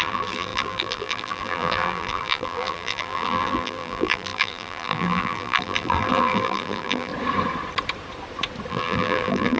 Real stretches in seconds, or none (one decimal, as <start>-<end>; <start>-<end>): 7.1-8.7